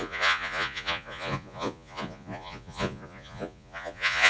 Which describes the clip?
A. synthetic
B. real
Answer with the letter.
A